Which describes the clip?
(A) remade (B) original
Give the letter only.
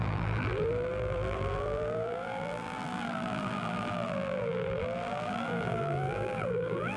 A